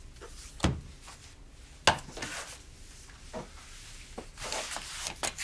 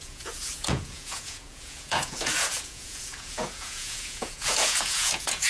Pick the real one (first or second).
first